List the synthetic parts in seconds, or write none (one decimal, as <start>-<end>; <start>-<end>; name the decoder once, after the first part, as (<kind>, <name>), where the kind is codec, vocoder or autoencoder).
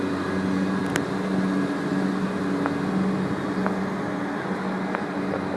none